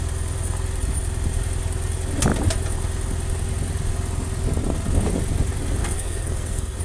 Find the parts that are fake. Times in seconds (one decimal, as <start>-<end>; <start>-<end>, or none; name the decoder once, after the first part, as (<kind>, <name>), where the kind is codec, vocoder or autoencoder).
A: 5.8-6.8 (codec, SNAC)

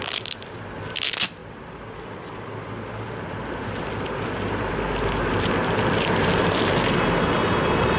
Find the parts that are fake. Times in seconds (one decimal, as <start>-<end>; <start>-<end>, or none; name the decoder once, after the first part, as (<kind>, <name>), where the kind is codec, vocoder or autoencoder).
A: none

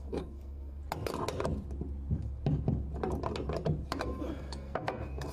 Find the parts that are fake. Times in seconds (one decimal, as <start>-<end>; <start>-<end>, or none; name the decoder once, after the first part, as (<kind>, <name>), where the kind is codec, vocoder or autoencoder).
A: 0.0-0.8 (codec, SNAC); 4.0-5.3

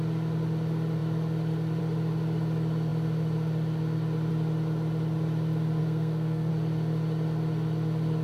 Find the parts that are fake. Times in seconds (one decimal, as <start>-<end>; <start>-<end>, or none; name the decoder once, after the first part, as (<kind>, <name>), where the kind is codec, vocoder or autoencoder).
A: 5.8-6.5 (codec, SNAC)

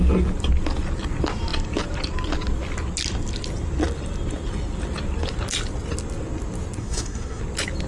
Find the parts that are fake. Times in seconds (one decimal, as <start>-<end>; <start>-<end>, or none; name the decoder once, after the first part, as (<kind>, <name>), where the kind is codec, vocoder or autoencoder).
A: 6.8-7.4 (codec, SNAC)

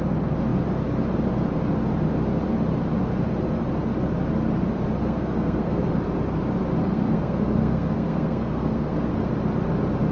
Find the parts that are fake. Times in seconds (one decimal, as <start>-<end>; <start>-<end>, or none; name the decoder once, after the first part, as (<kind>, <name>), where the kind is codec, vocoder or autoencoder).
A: 5.0-5.8 (codec, SNAC); 6.8-9.3

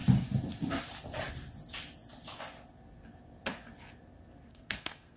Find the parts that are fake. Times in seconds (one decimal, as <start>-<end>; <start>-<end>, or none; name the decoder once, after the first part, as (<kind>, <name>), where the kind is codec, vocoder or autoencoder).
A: 4.5-5.2 (codec, SNAC)

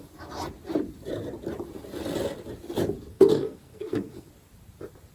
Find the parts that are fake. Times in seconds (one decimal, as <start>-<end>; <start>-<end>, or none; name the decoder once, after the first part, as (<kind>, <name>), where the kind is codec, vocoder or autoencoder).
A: 3.1-4.3 (codec, SNAC)